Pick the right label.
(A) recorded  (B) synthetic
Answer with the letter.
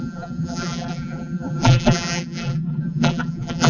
B